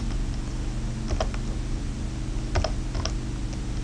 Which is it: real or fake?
real